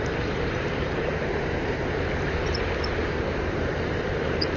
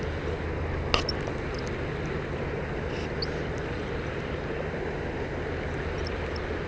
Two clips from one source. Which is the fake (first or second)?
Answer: first